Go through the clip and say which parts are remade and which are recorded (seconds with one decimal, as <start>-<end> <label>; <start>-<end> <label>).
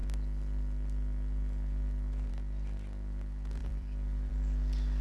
0.0-3.6 recorded; 3.6-4.3 remade; 4.3-5.0 recorded